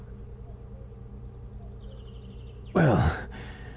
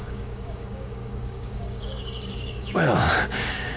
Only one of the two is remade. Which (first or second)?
second